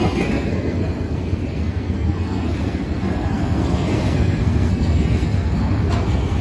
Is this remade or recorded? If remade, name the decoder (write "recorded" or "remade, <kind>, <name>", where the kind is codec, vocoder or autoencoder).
remade, codec, SNAC